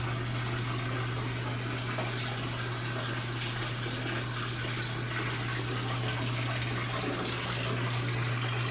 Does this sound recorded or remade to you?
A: recorded